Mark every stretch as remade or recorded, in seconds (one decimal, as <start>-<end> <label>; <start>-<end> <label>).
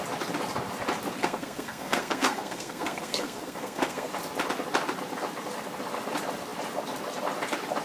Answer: 0.0-1.2 recorded; 1.2-4.1 remade; 4.1-7.8 recorded